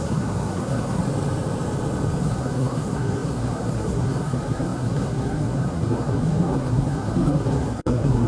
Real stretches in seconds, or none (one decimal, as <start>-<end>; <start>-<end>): 1.0-2.2